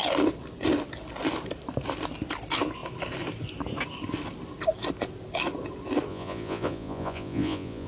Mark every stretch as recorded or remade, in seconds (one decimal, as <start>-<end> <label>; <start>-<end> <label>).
0.0-6.1 recorded; 6.1-7.9 remade